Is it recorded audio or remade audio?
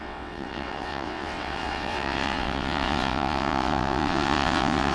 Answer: remade